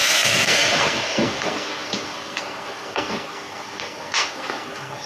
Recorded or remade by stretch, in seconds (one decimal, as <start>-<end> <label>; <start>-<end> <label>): 0.0-5.1 remade